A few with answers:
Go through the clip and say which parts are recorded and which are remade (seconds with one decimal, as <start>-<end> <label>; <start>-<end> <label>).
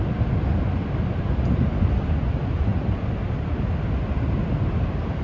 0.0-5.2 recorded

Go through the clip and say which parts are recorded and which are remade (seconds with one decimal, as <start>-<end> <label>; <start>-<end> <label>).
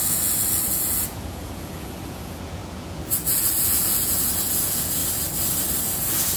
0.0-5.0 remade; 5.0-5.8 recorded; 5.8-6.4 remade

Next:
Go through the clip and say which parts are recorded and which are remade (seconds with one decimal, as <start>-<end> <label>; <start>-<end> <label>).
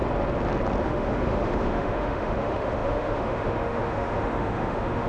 0.0-0.8 recorded; 0.8-5.1 remade